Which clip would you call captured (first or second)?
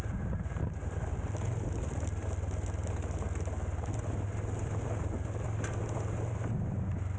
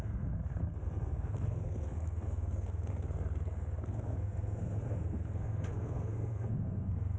first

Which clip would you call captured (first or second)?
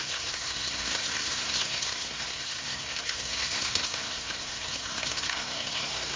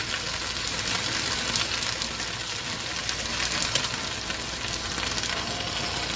second